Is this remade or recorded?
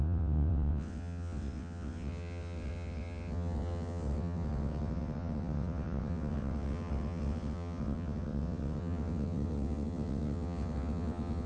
remade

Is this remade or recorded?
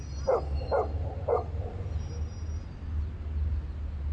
recorded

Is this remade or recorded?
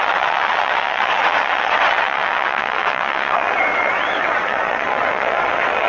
remade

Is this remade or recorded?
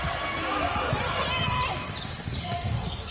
recorded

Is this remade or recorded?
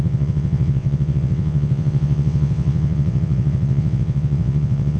remade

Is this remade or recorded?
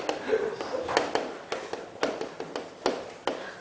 recorded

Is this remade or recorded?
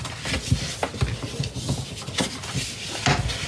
recorded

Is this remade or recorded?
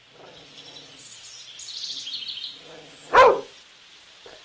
recorded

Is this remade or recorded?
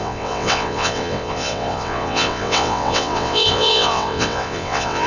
remade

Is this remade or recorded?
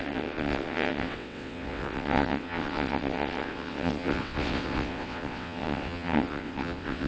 remade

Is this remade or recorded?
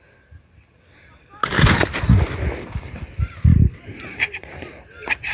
recorded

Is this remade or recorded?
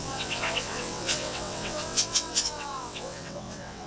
remade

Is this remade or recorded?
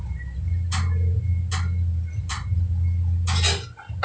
recorded